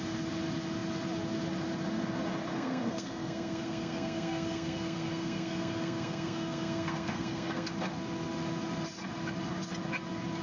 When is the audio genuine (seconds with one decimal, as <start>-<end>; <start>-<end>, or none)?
0.0-2.5; 7.7-10.4